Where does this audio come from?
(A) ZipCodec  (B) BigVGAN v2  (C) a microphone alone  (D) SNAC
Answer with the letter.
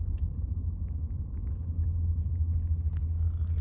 C